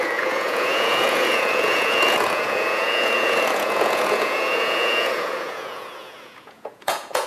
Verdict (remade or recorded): remade